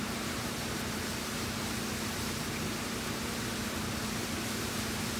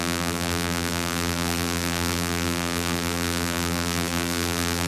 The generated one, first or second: second